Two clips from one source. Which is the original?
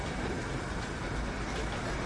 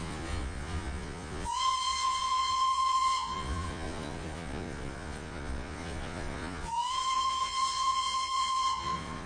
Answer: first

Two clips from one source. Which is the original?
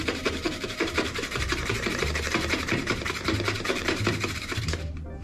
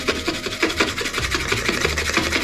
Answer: second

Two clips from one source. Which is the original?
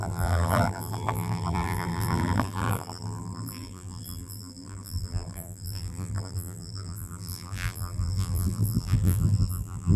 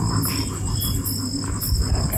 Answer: second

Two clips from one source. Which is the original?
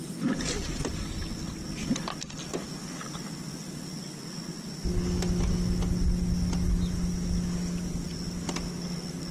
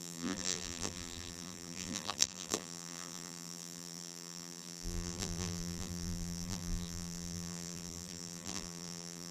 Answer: first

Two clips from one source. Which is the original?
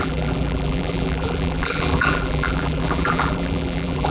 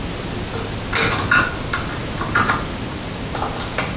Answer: second